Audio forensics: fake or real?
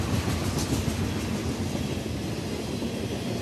real